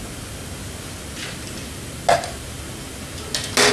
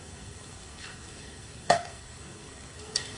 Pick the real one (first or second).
first